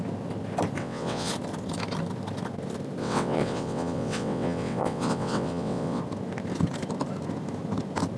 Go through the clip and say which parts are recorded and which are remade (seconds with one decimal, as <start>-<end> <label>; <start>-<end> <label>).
0.0-0.8 recorded; 0.8-1.3 remade; 1.3-3.0 recorded; 3.0-6.0 remade; 6.0-8.2 recorded

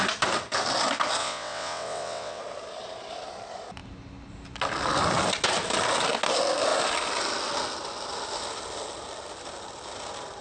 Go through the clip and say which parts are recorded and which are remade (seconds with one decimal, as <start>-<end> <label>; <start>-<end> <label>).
0.0-1.2 recorded; 1.2-2.4 remade; 2.4-10.4 recorded

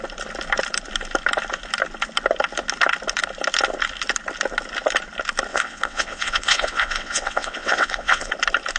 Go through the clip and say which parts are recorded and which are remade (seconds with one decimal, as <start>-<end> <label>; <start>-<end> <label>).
0.0-5.5 recorded; 5.5-8.3 remade; 8.3-8.8 recorded

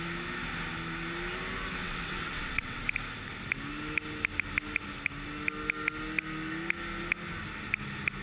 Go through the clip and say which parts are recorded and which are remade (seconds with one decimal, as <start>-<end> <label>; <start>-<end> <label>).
0.0-1.8 recorded; 1.8-2.8 remade; 2.8-8.2 recorded

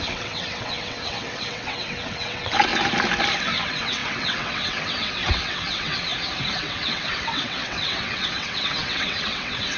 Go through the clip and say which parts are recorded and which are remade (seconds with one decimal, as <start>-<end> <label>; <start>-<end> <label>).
0.0-2.7 remade; 2.7-3.4 recorded; 3.4-6.1 remade; 6.1-6.6 recorded; 6.6-9.8 remade